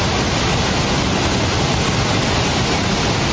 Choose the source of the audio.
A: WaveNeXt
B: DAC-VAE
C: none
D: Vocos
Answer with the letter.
C